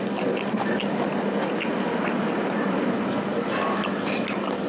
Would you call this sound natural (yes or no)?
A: yes